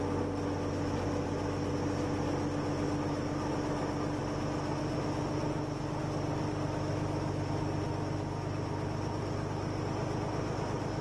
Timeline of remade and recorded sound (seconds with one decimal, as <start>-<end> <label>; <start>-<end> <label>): 0.0-11.0 recorded